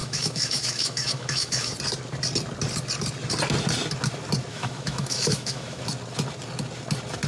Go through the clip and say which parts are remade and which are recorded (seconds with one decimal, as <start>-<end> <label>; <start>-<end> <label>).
0.0-1.7 remade; 1.7-4.5 recorded; 4.5-5.8 remade; 5.8-7.3 recorded